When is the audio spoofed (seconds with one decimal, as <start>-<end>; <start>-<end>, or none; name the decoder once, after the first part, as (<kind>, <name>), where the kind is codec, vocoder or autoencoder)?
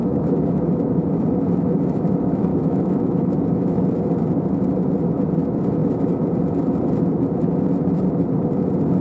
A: 0.0-0.7 (autoencoder, DAC-VAE); 2.5-3.8